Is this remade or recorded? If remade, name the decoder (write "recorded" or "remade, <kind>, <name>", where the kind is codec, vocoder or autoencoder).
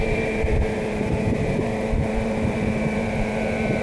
remade, vocoder, BigVGAN v2